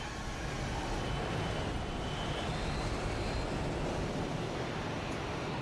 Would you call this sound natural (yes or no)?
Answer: yes